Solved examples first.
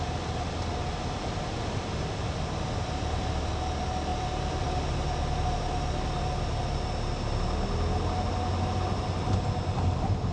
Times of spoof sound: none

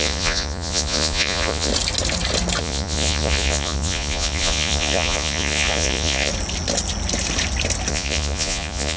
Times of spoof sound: 0.0-1.7 (vocoder, Vocos); 2.6-6.3; 7.9-9.0

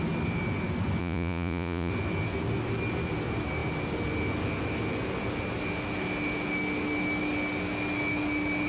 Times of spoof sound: 1.0-1.9 (vocoder, Vocos)

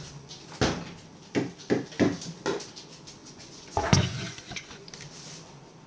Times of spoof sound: 3.2-4.9 (vocoder, Vocos)